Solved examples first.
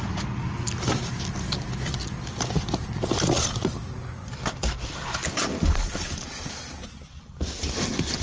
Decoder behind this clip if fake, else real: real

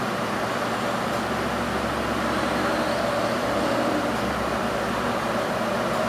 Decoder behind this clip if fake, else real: real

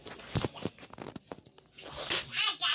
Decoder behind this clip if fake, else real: real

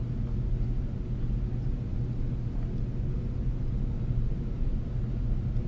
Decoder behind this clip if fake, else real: real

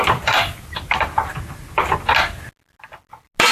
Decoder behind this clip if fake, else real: real